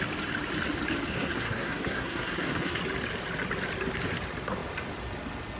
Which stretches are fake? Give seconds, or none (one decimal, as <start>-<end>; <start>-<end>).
1.1-2.8